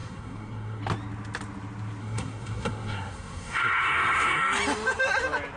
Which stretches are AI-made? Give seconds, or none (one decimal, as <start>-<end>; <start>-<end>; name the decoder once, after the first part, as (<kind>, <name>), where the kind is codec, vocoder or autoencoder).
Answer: 0.0-0.8 (codec, SNAC); 2.0-4.4